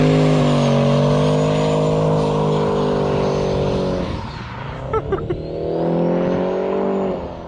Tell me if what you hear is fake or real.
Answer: real